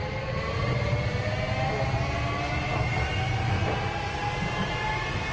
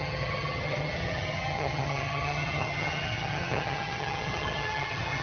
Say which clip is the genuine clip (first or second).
first